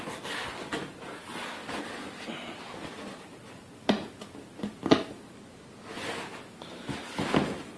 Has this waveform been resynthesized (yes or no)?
no